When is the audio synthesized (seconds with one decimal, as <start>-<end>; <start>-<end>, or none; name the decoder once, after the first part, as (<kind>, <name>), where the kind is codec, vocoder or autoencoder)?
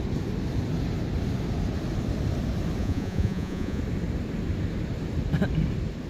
2.8-3.8 (vocoder, Vocos)